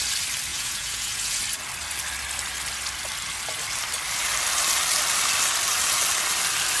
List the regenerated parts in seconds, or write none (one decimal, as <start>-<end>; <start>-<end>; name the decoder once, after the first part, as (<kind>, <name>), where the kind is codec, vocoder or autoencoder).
0.5-1.4 (vocoder, Vocos)